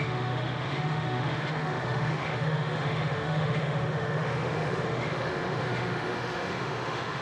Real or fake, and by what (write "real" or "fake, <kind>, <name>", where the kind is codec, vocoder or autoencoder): fake, autoencoder, DAC-VAE